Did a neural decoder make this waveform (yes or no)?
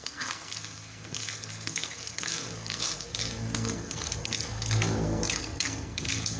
yes